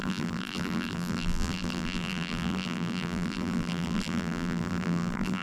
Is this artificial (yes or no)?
yes